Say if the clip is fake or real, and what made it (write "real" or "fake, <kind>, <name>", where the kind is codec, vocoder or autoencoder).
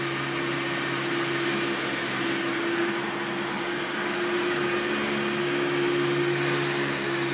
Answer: real